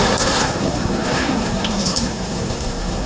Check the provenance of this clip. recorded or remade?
remade